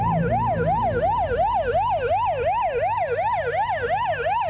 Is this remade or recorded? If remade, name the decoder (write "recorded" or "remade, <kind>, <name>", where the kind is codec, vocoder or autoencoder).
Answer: recorded